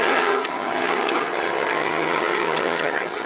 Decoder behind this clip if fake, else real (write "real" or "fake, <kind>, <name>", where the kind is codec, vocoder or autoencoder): fake, vocoder, HiFi-GAN